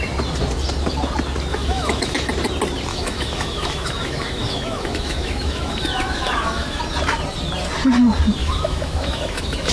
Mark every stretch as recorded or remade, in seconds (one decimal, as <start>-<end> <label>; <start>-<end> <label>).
0.0-1.5 recorded; 1.5-2.3 remade; 2.3-2.9 recorded; 2.9-6.8 remade; 6.8-8.4 recorded; 8.4-9.7 remade